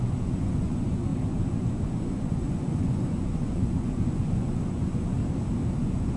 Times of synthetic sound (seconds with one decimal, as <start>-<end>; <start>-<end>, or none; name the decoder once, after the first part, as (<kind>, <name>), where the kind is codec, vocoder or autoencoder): 0.0-5.2 (vocoder, Vocos); 5.8-6.2